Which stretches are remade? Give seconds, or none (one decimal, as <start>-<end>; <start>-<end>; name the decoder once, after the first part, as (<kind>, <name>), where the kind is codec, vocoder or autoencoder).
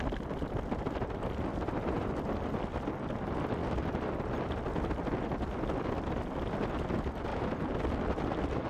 1.5-2.1 (vocoder, BigVGAN v2); 7.3-7.9